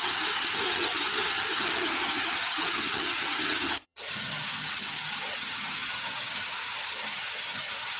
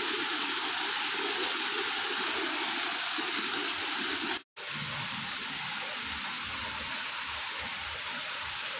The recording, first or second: second